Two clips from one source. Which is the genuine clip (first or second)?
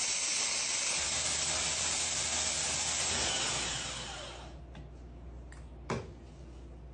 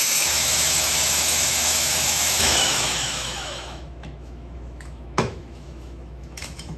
first